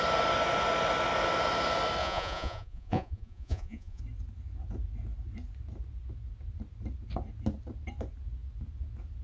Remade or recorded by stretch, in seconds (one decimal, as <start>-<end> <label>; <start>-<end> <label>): 0.0-2.0 recorded; 2.0-4.0 remade; 4.0-9.2 recorded